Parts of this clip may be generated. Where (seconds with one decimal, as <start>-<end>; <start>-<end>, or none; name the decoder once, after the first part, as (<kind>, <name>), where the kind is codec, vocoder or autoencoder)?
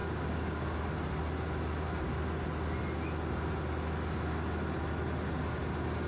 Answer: 0.0-0.8 (codec, DAC)